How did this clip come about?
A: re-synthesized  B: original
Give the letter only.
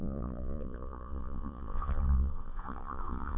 A